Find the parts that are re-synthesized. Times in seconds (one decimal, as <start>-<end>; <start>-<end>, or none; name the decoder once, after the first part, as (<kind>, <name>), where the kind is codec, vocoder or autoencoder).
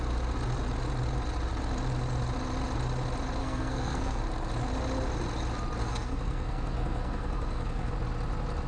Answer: 3.4-4.2 (codec, SNAC); 5.8-7.9